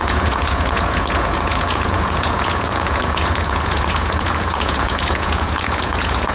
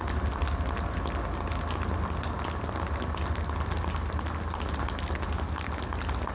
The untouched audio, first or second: second